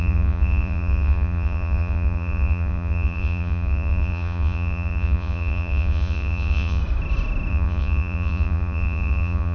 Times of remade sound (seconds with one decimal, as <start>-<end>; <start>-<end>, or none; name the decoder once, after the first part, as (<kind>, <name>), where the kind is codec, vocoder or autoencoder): 0.0-6.8 (vocoder, Vocos); 7.5-9.5